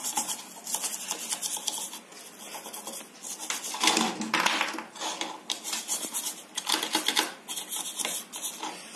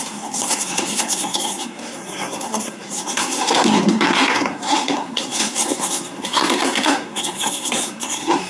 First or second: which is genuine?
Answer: first